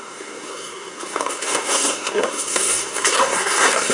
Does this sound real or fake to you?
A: fake